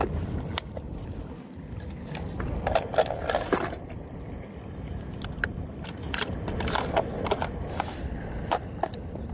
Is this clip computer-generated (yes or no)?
no